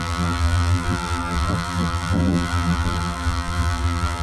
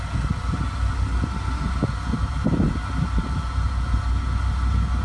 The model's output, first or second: first